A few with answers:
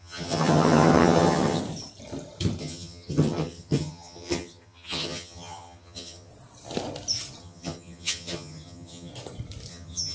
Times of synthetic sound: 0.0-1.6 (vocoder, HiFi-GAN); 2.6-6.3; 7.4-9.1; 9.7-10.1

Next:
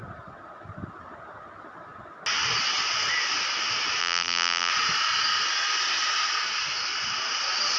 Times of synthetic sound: 4.0-4.7 (vocoder, BigVGAN v2)

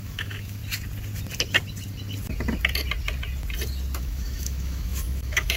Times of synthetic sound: 0.0-0.6 (autoencoder, DAC-VAE); 4.0-5.6